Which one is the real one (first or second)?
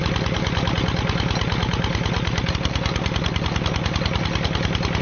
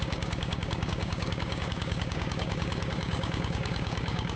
first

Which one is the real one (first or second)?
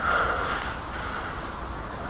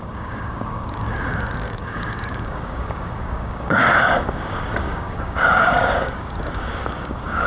first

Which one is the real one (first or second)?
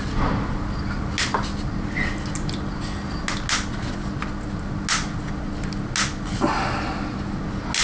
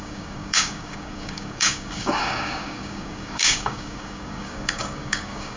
first